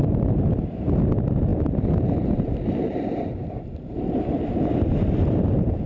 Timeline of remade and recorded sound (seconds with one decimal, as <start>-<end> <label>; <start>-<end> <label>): 0.0-1.0 remade; 1.0-1.5 recorded; 1.5-4.6 remade; 4.6-5.9 recorded

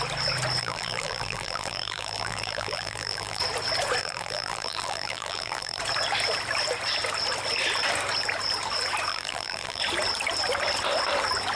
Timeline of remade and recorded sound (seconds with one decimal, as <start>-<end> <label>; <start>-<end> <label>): 0.0-0.6 recorded; 0.6-3.4 remade; 3.4-4.0 recorded; 4.0-5.8 remade; 5.8-9.1 recorded; 9.1-9.8 remade; 9.8-11.6 recorded

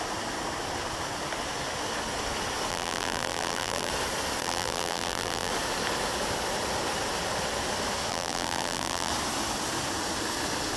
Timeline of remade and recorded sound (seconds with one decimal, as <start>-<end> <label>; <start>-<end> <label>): 0.0-2.7 recorded; 2.7-3.9 remade; 3.9-4.4 recorded; 4.4-5.5 remade; 5.5-8.1 recorded; 8.1-9.1 remade; 9.1-10.8 recorded

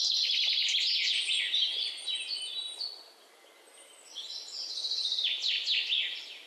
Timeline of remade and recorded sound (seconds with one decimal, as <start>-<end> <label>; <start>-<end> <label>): 0.0-6.5 recorded

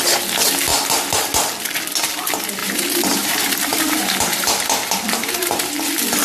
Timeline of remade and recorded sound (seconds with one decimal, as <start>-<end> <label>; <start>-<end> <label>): 0.0-2.6 recorded; 2.6-5.7 remade; 5.7-6.2 recorded

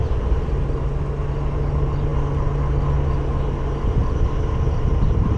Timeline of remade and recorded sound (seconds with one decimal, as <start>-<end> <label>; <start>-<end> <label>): 0.0-0.5 remade; 0.5-4.0 recorded; 4.0-5.4 remade